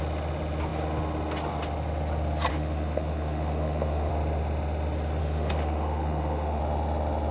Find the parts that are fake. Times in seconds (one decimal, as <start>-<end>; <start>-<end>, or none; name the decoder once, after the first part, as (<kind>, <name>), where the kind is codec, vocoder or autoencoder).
2.5-4.1 (autoencoder, DAC-VAE); 5.2-6.6